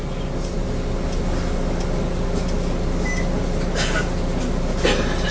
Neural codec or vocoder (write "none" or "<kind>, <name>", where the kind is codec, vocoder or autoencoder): none